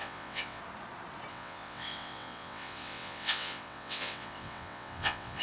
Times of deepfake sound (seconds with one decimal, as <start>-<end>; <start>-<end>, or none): 0.0-0.6; 1.3-5.4